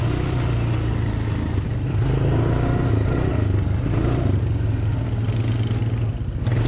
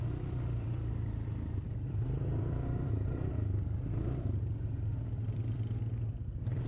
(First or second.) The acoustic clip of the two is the first